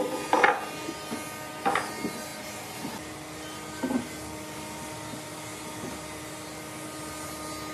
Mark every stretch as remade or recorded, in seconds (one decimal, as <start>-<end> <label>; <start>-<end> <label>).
0.0-7.7 recorded